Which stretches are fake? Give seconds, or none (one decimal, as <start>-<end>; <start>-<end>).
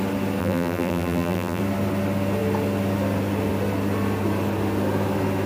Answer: 0.4-1.6